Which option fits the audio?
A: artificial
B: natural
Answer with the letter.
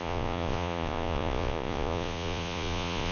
A